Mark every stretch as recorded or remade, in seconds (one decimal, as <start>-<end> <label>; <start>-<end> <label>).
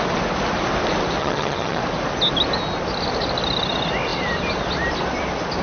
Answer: 0.0-1.2 recorded; 1.2-1.8 remade; 1.8-5.6 recorded